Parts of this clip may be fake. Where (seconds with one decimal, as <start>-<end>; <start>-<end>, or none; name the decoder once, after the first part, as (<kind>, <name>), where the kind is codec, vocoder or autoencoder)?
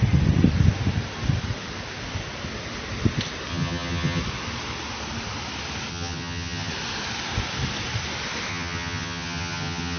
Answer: 3.5-4.2 (vocoder, HiFi-GAN); 5.9-6.7; 8.5-10.0